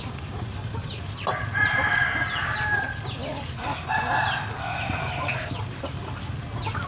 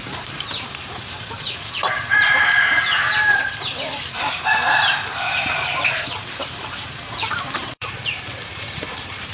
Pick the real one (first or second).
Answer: first